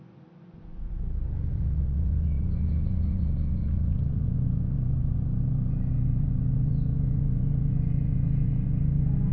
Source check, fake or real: fake